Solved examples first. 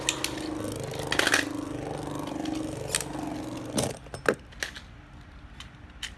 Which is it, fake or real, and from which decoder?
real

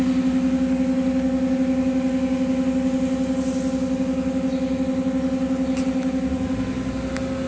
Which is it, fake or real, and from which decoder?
real